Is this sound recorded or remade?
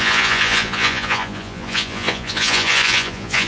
remade